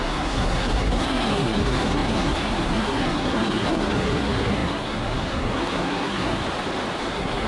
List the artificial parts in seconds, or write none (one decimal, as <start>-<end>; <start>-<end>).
0.0-6.4; 7.0-7.5